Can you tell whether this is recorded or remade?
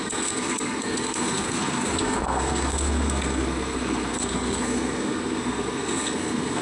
remade